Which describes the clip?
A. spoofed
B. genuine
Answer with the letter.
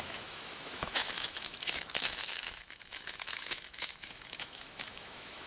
A